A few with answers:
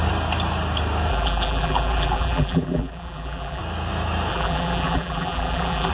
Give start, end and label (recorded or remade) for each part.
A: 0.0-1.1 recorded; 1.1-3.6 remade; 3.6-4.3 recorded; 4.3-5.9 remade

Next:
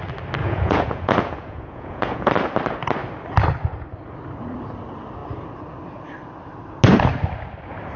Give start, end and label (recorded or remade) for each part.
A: 0.0-0.4 recorded; 0.4-2.3 remade; 2.3-8.0 recorded

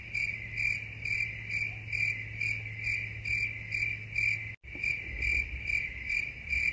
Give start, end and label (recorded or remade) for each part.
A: 0.0-6.7 recorded

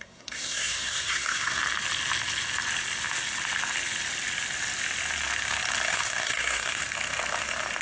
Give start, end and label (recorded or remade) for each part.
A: 0.0-1.6 remade; 1.6-5.9 recorded; 5.9-6.8 remade; 6.8-7.8 recorded

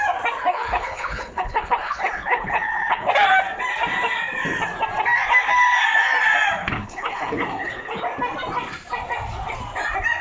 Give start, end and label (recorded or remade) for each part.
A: 0.0-0.5 recorded; 0.5-3.1 remade; 3.1-6.6 recorded; 6.6-8.0 remade; 8.0-10.2 recorded

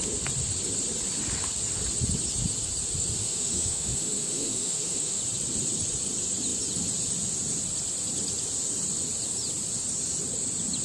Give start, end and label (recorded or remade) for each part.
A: 0.0-3.2 recorded; 3.2-5.2 remade; 5.2-10.8 recorded

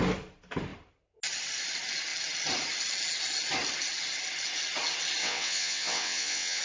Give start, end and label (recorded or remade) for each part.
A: 0.0-5.2 recorded; 5.2-6.6 remade

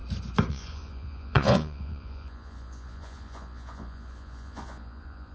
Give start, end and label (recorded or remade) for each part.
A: 0.0-0.5 recorded; 0.5-5.3 remade